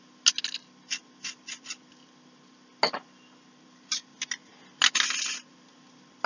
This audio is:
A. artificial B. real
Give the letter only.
B